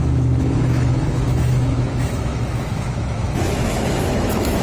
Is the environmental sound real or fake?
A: fake